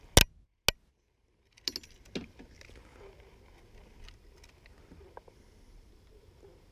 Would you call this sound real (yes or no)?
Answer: yes